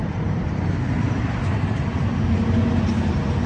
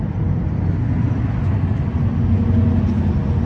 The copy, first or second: first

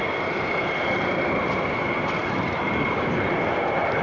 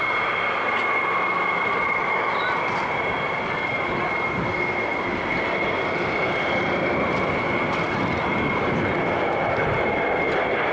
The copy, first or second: first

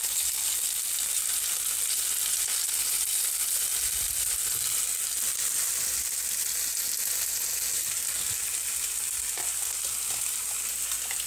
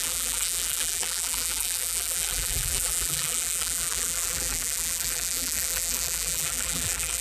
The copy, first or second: second